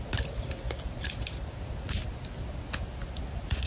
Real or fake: real